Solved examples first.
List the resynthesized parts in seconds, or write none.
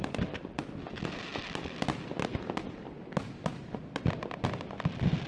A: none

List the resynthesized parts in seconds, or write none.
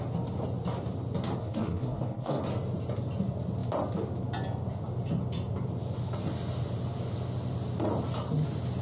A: 1.4-2.4 (codec, SNAC)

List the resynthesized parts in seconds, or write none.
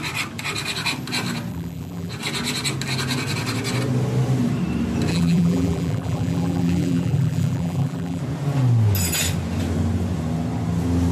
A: 1.5-2.1 (vocoder, BigVGAN v2); 5.1-8.2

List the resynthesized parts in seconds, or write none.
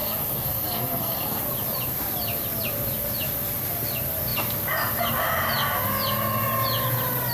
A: 0.0-1.4 (codec, SNAC)